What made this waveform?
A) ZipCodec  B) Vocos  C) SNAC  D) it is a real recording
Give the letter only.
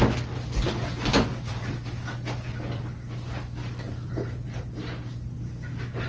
D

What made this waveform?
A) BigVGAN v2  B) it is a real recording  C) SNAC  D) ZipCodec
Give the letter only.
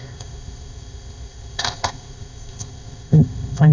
D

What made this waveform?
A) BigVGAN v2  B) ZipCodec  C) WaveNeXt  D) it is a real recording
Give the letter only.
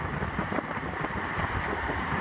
D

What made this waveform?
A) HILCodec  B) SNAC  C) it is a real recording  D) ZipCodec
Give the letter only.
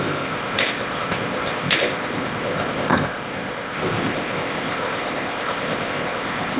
D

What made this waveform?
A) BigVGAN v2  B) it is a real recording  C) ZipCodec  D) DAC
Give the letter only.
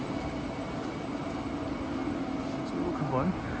B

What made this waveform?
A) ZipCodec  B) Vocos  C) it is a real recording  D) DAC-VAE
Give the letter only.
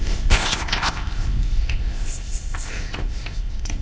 A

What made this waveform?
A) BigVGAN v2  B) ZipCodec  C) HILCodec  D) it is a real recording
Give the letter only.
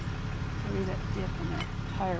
D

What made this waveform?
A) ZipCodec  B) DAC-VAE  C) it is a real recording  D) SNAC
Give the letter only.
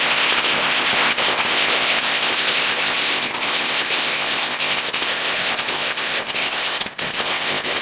A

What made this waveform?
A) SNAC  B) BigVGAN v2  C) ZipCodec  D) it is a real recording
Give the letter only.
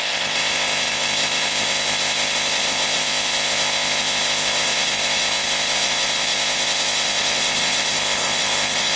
C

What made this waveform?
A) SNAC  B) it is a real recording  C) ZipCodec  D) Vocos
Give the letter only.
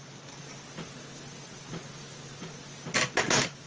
B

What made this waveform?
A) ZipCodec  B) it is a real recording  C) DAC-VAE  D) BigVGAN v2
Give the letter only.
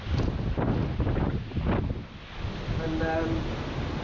B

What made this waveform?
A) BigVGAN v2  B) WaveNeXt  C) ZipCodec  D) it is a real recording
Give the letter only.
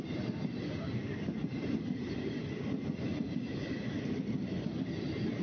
D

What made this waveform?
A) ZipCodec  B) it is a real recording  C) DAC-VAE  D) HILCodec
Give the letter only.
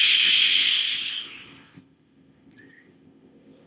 A